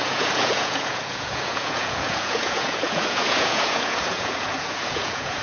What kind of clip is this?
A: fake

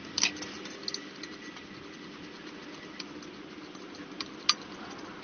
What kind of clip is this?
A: real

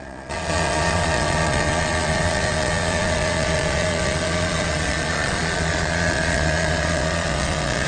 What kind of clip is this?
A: fake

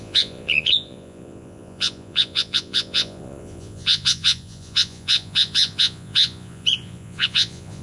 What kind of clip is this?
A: fake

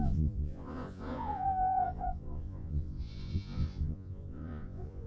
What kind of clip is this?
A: fake